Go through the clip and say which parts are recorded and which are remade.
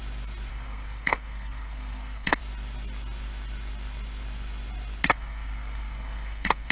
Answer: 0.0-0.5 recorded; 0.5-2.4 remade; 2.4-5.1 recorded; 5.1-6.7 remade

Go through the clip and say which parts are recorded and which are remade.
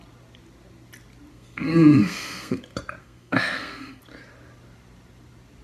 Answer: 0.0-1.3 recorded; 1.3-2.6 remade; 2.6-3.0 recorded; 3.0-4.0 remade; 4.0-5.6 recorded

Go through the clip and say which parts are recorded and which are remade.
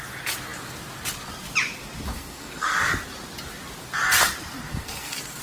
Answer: 0.0-2.1 recorded; 2.1-2.9 remade; 2.9-4.7 recorded; 4.7-5.4 remade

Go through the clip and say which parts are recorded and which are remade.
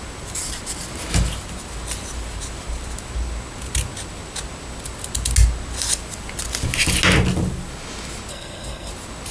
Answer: 0.0-8.3 recorded; 8.3-8.9 remade; 8.9-9.3 recorded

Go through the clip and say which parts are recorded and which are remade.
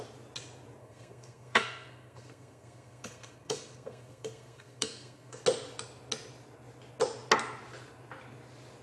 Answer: 0.0-0.8 recorded; 0.8-5.4 remade; 5.4-8.8 recorded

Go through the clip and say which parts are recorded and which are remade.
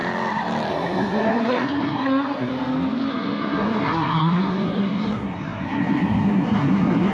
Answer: 0.0-0.7 recorded; 0.7-2.5 remade; 2.5-3.1 recorded; 3.1-7.1 remade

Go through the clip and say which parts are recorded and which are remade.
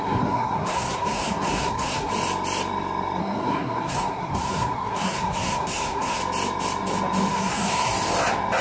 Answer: 0.0-2.1 remade; 2.1-3.2 recorded; 3.2-6.2 remade; 6.2-7.3 recorded; 7.3-7.9 remade; 7.9-8.6 recorded